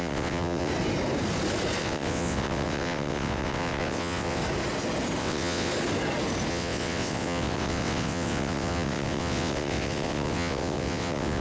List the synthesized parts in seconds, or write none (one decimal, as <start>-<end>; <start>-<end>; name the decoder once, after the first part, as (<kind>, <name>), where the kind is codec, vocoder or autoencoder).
0.0-0.7 (vocoder, WaveNeXt); 1.8-4.4; 5.2-5.7; 6.5-11.4